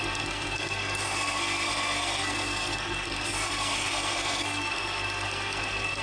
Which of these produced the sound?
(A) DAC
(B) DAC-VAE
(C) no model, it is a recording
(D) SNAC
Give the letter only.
D